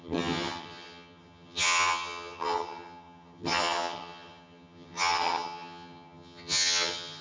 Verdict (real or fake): fake